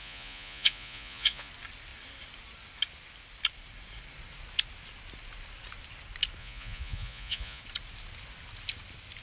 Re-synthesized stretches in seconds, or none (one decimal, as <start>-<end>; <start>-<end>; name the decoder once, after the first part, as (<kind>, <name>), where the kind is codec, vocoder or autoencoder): 0.0-1.5 (vocoder, Vocos); 6.4-7.6